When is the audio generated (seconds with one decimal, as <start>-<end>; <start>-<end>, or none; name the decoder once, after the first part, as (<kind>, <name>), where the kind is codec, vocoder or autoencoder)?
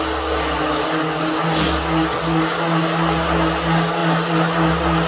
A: none